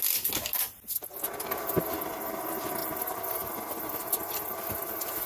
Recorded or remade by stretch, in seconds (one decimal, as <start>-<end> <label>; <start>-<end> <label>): 0.0-5.3 recorded